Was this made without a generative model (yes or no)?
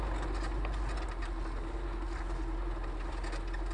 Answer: yes